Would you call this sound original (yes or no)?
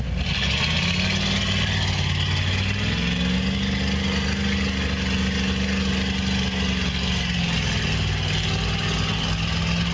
yes